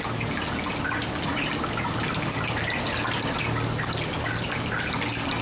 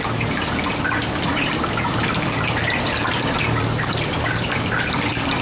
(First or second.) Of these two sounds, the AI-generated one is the second